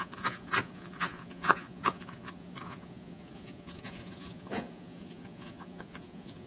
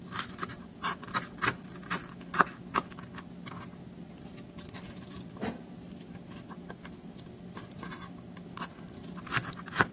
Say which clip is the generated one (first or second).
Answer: first